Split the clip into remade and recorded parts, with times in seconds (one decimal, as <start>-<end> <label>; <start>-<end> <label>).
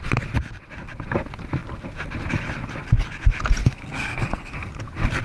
0.0-3.6 recorded; 3.6-4.7 remade; 4.7-5.2 recorded